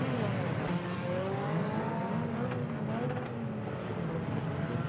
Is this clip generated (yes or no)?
no